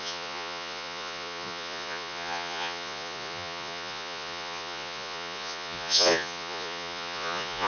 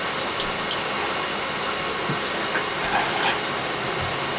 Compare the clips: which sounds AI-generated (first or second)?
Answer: first